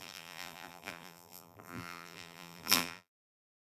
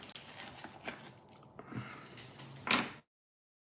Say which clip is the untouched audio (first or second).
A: second